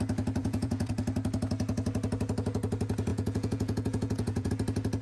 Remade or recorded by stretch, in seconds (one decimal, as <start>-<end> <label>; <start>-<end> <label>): 0.0-0.4 recorded; 0.4-0.9 remade; 0.9-3.1 recorded; 3.1-4.5 remade; 4.5-5.0 recorded

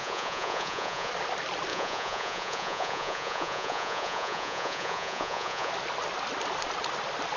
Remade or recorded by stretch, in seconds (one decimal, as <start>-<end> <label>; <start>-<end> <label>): 0.0-1.1 remade; 1.1-1.7 recorded; 1.7-5.7 remade; 5.7-7.4 recorded

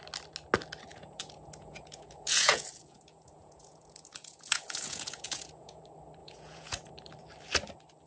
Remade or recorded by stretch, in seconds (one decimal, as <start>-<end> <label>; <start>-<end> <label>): 0.0-0.9 recorded; 0.9-5.8 remade; 5.8-6.2 recorded; 6.2-6.9 remade; 6.9-8.1 recorded

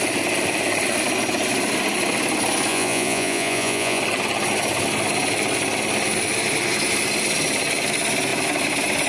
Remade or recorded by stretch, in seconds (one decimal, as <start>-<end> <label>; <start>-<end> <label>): 0.0-2.7 recorded; 2.7-4.0 remade; 4.0-9.1 recorded

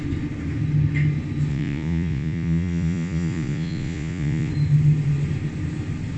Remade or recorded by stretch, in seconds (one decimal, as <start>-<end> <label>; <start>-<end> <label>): 0.0-1.5 recorded; 1.5-4.5 remade; 4.5-6.2 recorded

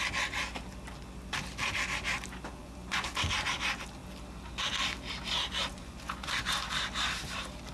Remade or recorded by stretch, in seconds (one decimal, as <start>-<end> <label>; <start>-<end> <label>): 0.0-2.6 recorded; 2.6-3.1 remade; 3.1-5.7 recorded; 5.7-6.5 remade; 6.5-7.7 recorded

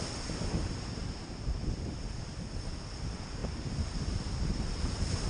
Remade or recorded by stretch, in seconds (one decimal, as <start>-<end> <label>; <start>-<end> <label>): 0.0-5.3 recorded